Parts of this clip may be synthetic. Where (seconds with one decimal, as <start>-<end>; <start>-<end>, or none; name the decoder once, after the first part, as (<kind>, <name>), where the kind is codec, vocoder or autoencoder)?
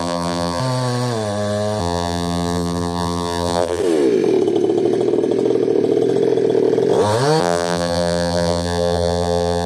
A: 0.0-0.6 (vocoder, BigVGAN v2); 1.8-3.8; 7.4-9.7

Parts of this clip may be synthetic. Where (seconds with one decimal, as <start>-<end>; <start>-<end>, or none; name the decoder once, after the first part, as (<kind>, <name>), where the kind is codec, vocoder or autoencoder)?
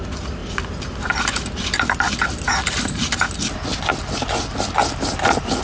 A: none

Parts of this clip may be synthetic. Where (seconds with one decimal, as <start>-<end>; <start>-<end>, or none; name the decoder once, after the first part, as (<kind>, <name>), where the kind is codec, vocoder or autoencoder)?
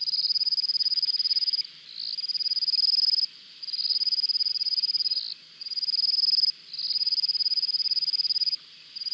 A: 4.5-5.6 (vocoder, BigVGAN v2)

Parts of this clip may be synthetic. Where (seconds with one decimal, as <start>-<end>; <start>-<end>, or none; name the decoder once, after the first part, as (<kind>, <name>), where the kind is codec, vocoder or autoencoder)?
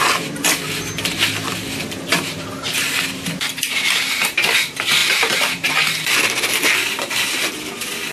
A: 5.0-5.7 (vocoder, BigVGAN v2)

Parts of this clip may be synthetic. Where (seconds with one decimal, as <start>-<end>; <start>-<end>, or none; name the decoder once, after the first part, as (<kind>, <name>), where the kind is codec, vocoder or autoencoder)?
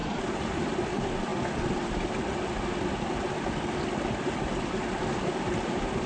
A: 0.5-1.3 (vocoder, BigVGAN v2); 5.0-6.1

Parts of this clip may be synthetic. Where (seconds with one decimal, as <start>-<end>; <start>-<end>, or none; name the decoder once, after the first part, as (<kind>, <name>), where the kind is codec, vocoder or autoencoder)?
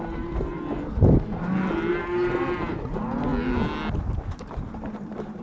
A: 0.0-0.5 (vocoder, BigVGAN v2); 1.9-3.3; 4.1-5.4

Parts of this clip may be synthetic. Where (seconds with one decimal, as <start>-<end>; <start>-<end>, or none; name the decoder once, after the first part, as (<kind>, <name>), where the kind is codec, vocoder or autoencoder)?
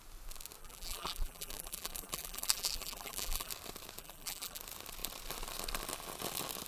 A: 0.6-3.5 (vocoder, BigVGAN v2); 4.0-4.6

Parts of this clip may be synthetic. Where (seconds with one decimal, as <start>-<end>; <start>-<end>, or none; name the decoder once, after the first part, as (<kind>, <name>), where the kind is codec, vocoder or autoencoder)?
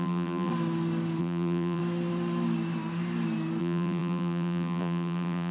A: 0.0-0.5 (vocoder, BigVGAN v2); 1.2-1.8; 3.6-5.5